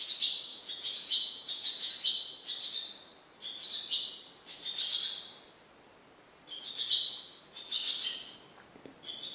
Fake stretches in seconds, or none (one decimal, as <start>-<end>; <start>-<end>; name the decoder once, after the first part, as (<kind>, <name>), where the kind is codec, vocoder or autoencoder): 0.5-1.9 (vocoder, Vocos)